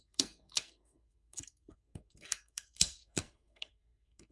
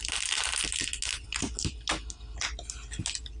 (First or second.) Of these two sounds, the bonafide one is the second